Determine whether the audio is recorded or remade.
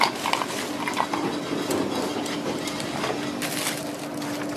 recorded